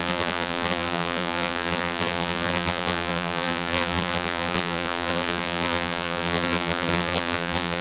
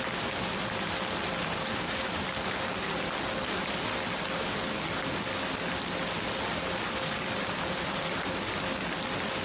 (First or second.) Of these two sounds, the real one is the second